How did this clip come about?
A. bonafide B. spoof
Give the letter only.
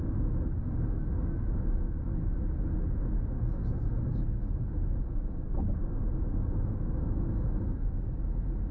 A